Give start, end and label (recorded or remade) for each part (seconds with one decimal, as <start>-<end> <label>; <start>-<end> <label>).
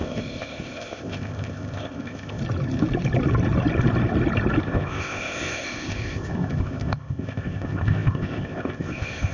0.0-2.4 remade; 2.4-4.6 recorded; 4.6-9.3 remade